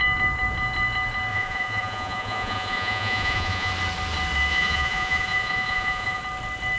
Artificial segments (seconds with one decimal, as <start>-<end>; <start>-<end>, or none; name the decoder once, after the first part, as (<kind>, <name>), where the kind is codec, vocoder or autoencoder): 1.3-3.7 (vocoder, Vocos); 4.5-6.2

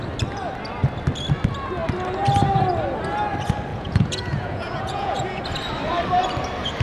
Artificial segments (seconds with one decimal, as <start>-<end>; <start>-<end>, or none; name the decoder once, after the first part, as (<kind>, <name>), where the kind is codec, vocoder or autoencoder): 3.7-5.4 (vocoder, Vocos)

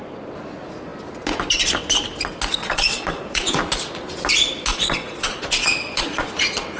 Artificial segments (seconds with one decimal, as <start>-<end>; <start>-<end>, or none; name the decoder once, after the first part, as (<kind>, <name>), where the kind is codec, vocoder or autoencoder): 2.6-3.6 (vocoder, Vocos); 4.7-6.3

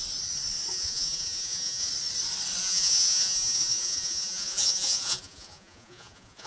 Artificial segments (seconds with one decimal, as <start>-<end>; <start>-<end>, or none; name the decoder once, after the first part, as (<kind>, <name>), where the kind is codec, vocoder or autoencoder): 0.7-1.9 (vocoder, Vocos); 2.6-6.5

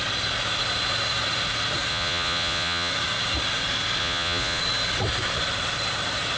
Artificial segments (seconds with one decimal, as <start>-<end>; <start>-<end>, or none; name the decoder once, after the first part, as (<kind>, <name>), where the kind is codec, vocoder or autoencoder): 1.9-2.9 (vocoder, Vocos); 4.0-4.6

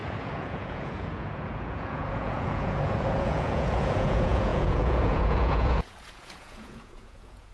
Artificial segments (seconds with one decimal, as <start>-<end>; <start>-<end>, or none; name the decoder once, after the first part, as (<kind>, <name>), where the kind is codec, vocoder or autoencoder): 0.0-7.5 (vocoder, Vocos)

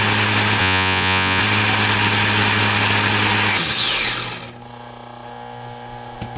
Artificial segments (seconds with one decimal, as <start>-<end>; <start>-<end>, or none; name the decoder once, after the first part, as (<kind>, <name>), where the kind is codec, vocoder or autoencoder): 0.6-1.4 (vocoder, Vocos)